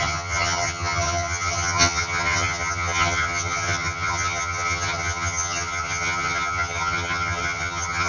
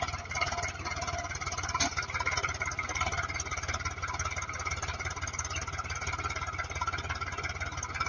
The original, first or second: second